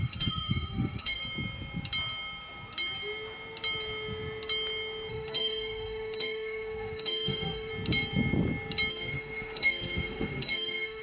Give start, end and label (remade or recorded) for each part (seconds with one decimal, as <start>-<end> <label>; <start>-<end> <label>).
0.0-1.2 remade; 1.2-5.1 recorded; 5.1-7.7 remade; 7.7-8.9 recorded; 8.9-11.0 remade